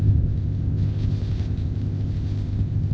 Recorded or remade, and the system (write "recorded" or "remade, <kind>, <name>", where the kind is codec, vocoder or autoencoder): remade, codec, ZipCodec